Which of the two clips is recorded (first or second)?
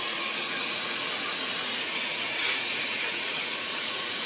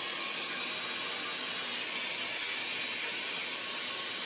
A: second